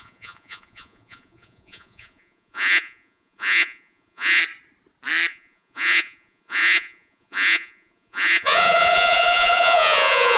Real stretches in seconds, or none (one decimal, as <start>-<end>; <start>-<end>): 4.4-5.3